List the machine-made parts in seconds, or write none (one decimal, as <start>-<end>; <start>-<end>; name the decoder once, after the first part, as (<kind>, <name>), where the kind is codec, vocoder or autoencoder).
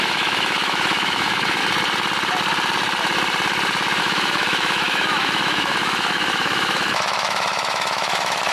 0.0-1.6 (autoencoder, DAC-VAE); 4.0-8.5